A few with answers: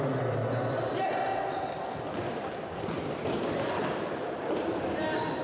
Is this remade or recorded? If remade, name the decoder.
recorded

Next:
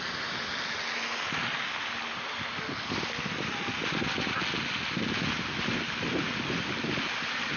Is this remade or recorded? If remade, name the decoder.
recorded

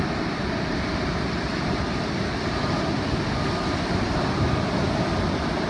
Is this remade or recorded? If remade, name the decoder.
recorded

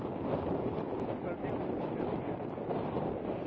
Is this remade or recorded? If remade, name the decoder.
recorded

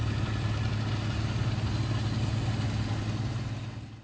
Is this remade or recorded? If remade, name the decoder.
recorded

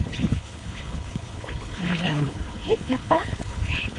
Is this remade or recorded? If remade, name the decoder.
remade, codec, HILCodec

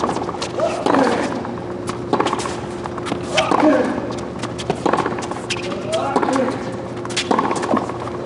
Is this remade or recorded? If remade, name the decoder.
recorded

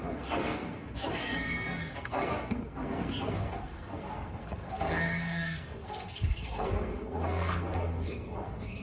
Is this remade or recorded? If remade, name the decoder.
remade, codec, SNAC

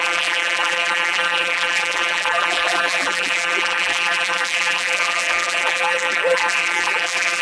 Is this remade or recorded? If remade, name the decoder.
remade, vocoder, BigVGAN v2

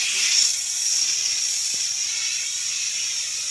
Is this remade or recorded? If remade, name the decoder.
recorded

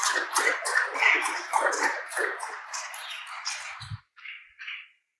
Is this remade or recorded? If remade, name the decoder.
remade, vocoder, BigVGAN v2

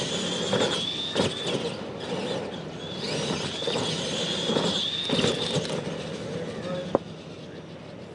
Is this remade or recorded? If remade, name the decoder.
recorded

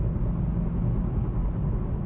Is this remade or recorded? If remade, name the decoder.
recorded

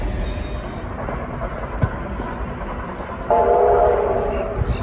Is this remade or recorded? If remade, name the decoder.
recorded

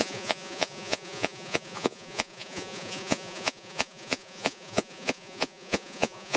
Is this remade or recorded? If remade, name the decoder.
remade, vocoder, Vocos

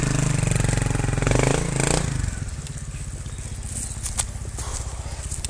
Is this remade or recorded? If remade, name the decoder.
recorded